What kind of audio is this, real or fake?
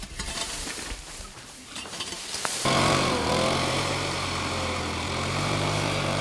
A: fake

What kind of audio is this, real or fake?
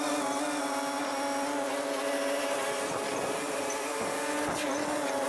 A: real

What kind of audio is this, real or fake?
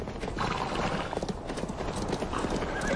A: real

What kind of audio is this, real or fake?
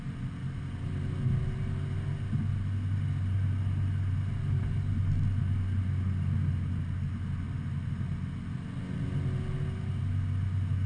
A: real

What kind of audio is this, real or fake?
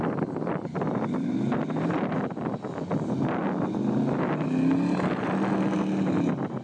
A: real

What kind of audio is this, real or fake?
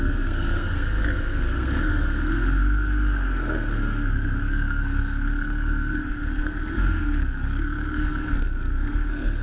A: fake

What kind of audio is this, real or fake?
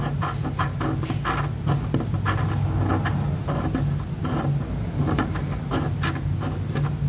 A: real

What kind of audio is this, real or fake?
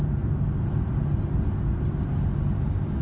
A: real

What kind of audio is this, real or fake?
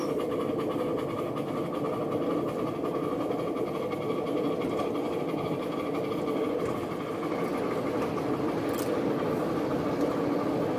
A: real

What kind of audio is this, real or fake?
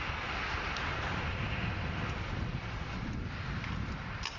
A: real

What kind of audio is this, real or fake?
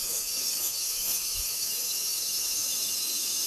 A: fake